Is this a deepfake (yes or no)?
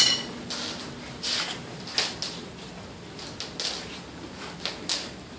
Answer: no